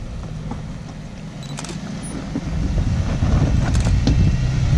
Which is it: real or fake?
real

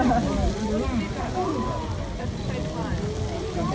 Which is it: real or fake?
real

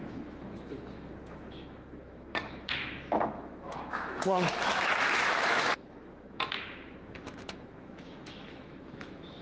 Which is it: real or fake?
fake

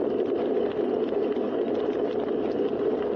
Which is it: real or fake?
real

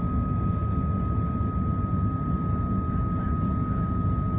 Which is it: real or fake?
real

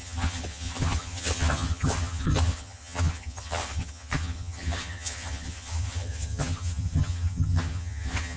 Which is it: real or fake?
fake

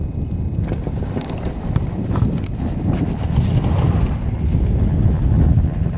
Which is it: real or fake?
real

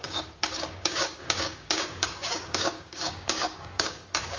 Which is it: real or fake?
fake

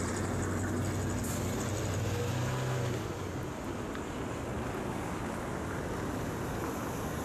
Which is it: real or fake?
real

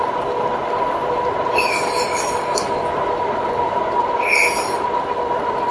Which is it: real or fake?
real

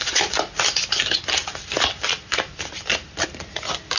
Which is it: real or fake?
real